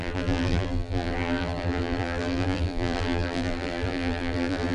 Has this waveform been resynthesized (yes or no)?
yes